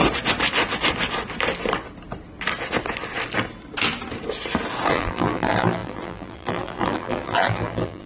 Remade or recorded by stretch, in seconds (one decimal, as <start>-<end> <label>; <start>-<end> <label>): 0.0-4.9 recorded; 4.9-8.1 remade